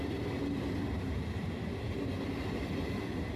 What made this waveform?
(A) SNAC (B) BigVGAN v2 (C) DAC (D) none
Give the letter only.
D